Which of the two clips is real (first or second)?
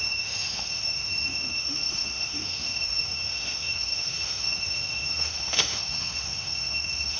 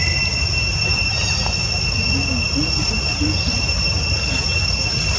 second